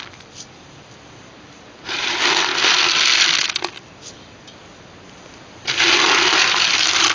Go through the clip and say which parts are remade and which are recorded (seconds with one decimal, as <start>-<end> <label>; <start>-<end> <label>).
0.0-2.5 remade; 2.5-6.1 recorded; 6.1-7.1 remade